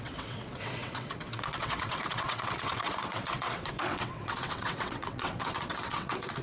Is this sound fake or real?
fake